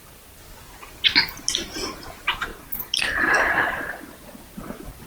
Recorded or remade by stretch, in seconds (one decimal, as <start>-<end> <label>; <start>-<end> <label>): 0.0-5.1 recorded